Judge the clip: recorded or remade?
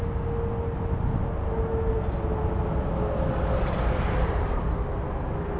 recorded